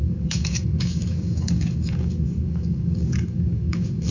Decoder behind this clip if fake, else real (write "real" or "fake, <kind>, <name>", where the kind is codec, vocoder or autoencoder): fake, codec, DAC